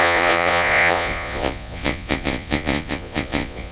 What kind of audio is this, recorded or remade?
remade